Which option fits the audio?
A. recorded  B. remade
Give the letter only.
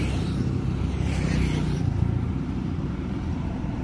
B